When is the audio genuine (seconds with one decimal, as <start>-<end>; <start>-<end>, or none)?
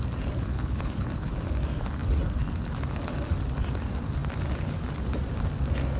0.0-0.5; 1.3-6.0